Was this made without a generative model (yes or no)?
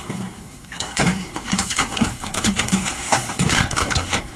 no